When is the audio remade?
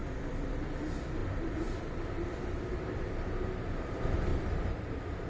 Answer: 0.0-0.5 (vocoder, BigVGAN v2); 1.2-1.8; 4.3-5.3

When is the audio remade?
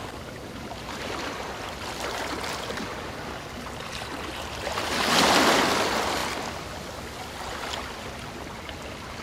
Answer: none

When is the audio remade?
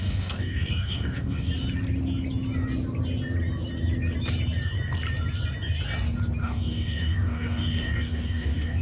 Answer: 0.0-1.5 (codec, DAC); 6.4-8.8